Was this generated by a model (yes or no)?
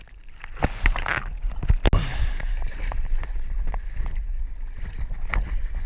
no